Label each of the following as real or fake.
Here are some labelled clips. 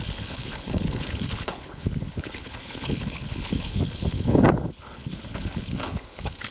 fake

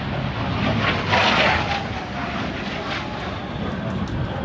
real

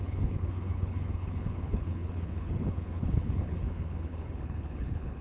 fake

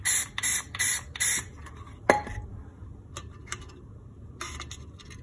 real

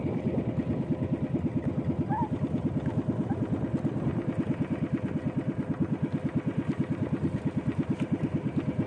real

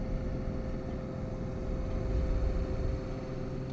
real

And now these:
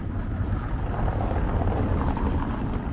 real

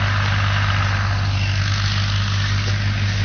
real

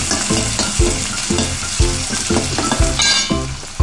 real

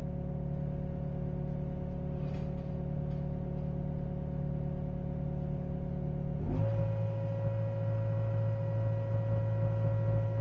real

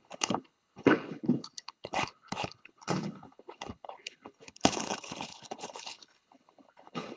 fake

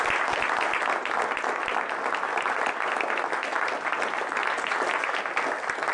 real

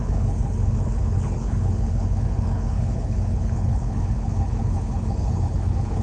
fake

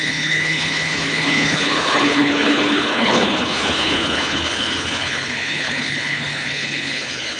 fake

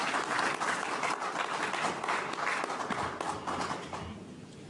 real